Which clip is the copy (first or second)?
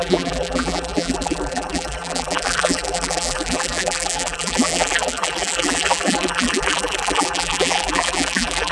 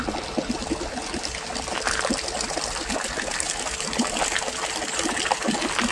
first